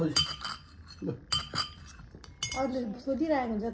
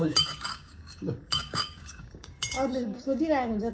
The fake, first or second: second